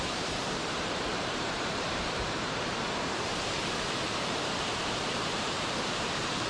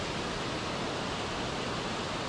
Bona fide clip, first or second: second